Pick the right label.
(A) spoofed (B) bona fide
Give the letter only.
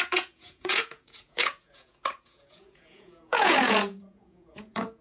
A